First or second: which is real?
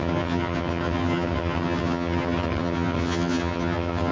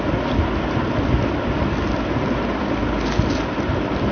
second